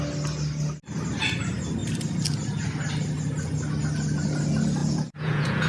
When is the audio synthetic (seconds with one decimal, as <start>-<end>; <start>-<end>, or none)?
4.8-5.7